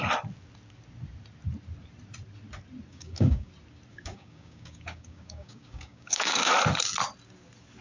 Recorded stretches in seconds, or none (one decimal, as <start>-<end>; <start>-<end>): 0.0-2.9; 3.5-3.9; 6.5-7.8